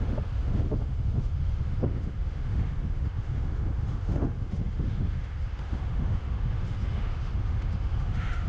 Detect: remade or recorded remade